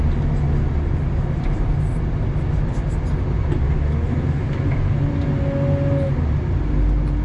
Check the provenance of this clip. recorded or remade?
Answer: recorded